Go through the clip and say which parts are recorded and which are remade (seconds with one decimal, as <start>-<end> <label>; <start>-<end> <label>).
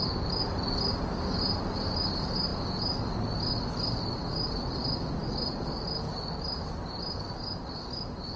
0.0-8.4 recorded